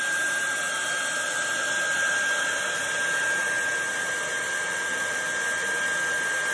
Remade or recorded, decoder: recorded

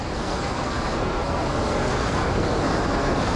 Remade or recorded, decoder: remade, codec, SNAC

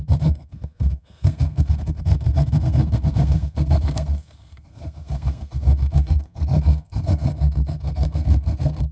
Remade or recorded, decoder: remade, codec, SNAC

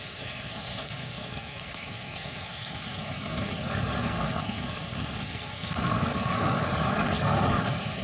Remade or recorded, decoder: remade, codec, SNAC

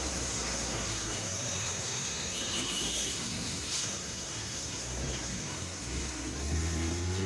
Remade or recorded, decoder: remade, codec, SNAC